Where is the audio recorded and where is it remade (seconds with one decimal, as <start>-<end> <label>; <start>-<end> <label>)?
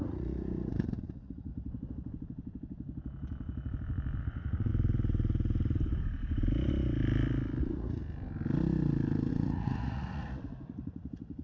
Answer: 0.0-1.5 remade; 1.5-4.2 recorded; 4.2-4.7 remade; 4.7-7.6 recorded; 7.6-8.0 remade; 8.0-9.3 recorded; 9.3-11.4 remade